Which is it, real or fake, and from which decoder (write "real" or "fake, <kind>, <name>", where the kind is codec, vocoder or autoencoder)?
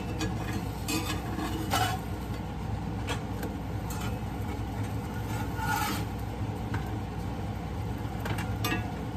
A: real